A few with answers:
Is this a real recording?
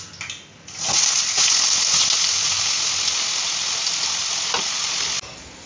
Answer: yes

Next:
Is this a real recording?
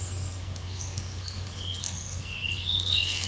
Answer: no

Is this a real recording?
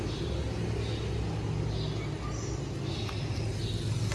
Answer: yes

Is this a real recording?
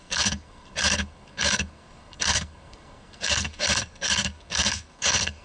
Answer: no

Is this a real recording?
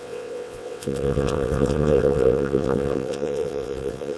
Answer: no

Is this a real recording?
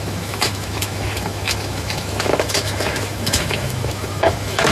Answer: no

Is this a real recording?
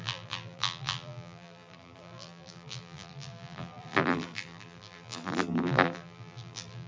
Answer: no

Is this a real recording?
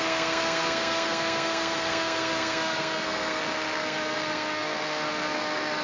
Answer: no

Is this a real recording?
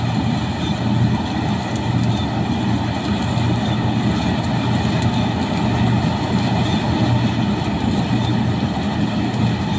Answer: yes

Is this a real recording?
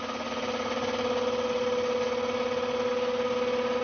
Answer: yes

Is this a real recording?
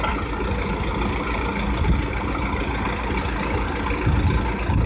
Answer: yes